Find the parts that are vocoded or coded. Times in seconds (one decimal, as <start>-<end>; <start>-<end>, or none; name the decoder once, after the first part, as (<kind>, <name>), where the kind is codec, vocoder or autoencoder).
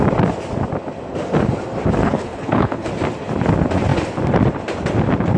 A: 2.0-2.9 (codec, HILCodec)